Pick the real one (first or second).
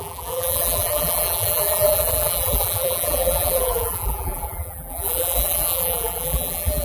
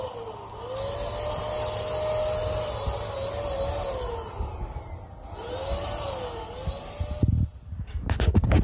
second